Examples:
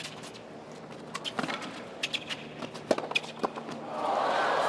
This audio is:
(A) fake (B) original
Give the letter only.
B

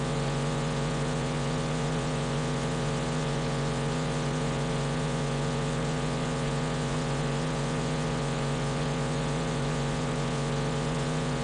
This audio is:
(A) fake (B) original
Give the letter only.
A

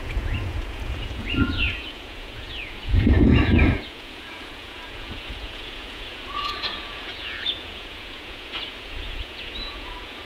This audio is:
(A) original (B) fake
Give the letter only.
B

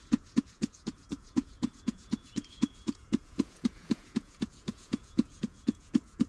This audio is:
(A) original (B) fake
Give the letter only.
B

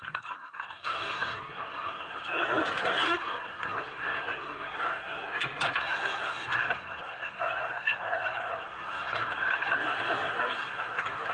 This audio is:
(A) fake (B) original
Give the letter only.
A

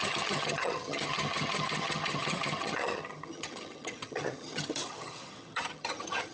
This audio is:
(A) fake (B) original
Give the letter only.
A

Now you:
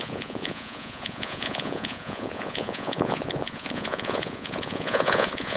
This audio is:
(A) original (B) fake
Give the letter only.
B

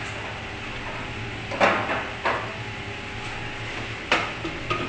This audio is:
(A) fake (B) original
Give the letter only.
B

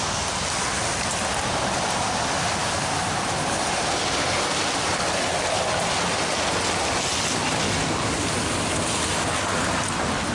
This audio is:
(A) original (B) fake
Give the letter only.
A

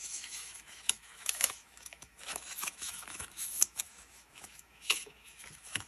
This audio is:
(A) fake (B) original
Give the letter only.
A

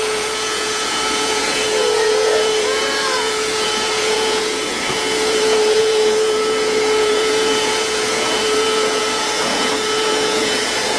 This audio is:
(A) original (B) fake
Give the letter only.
B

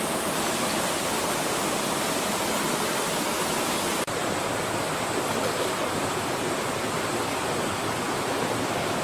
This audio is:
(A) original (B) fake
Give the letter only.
A